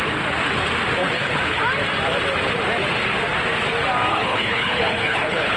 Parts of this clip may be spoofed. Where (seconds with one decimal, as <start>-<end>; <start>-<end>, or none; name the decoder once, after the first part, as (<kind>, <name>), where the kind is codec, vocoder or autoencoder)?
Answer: 1.0-1.6 (codec, HILCodec); 4.1-5.6